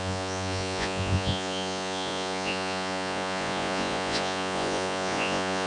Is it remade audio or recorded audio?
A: remade